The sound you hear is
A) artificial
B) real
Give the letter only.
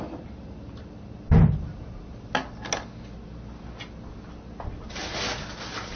B